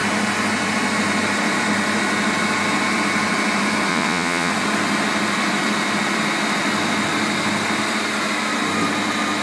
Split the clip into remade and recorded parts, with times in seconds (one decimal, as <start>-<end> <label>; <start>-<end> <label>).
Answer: 0.0-3.9 recorded; 3.9-4.5 remade; 4.5-9.4 recorded